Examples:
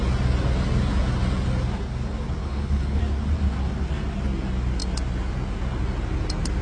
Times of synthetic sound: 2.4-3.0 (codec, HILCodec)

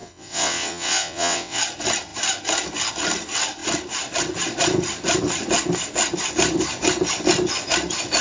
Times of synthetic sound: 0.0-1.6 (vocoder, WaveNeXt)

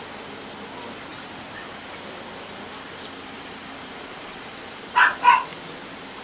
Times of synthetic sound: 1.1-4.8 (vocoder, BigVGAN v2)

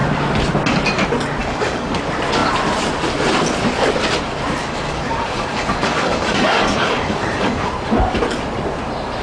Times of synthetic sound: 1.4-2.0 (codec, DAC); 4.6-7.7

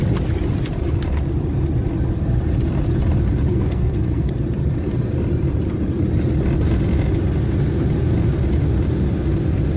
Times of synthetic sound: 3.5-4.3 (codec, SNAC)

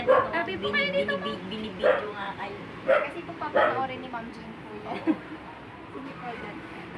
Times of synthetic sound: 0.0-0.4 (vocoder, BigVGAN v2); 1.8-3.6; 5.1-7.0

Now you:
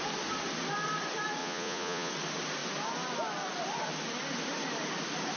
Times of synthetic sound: 1.4-2.1 (vocoder, Vocos)

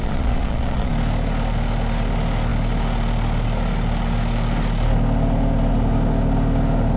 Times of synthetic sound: 0.0-0.9 (vocoder, Vocos)